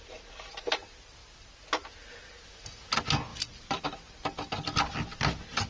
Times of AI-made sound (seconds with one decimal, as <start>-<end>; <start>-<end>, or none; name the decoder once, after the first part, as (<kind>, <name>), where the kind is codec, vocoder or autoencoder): 0.0-0.7 (vocoder, BigVGAN v2); 3.3-3.8